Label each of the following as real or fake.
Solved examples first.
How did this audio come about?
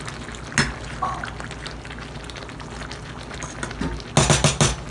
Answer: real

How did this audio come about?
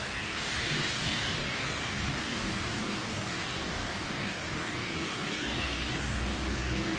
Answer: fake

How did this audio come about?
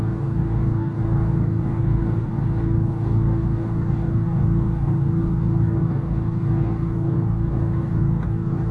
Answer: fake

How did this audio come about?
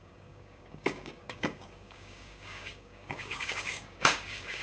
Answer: fake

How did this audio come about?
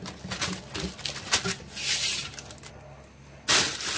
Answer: real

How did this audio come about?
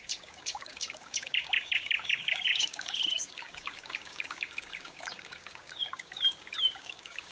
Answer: fake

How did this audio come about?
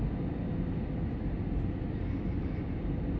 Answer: real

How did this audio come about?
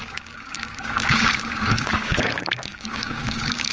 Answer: fake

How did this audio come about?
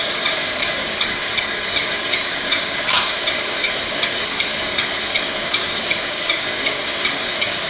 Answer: fake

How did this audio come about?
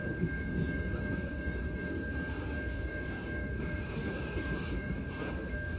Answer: fake